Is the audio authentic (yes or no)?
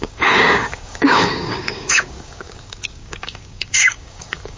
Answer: no